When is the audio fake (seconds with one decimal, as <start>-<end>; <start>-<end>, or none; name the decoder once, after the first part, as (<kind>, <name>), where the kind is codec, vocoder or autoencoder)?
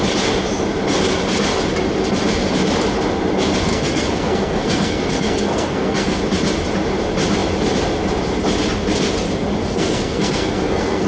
3.7-6.2 (codec, SNAC); 9.6-11.1